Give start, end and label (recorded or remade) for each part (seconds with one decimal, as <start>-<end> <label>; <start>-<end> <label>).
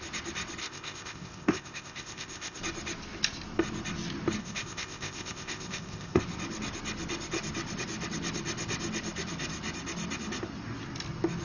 0.0-0.6 recorded; 0.6-2.6 remade; 2.6-4.4 recorded; 4.4-6.2 remade; 6.2-11.4 recorded